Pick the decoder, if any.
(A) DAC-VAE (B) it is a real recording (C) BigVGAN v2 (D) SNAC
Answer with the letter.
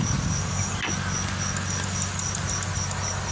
B